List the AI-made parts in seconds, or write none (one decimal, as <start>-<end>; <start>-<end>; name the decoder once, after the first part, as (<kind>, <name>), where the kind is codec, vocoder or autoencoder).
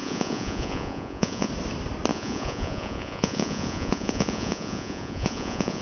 0.0-1.5 (vocoder, Vocos); 2.1-5.8